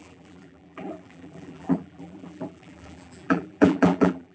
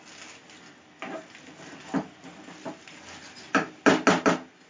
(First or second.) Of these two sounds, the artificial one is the first